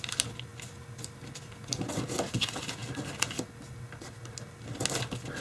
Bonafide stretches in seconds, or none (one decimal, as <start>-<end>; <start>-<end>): 0.0-5.4